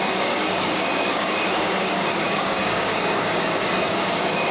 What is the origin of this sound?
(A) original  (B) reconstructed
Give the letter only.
B